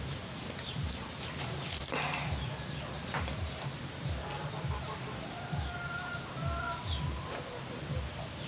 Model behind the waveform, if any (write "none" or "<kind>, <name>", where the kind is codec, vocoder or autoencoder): none